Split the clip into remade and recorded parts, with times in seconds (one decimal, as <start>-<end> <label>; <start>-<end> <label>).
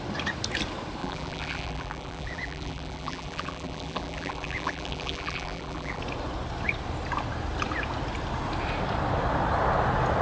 0.0-1.0 recorded; 1.0-6.0 remade; 6.0-10.2 recorded